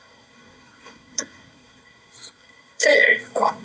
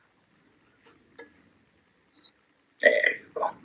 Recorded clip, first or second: second